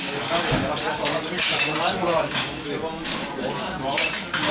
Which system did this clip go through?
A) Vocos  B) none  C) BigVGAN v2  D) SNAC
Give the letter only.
B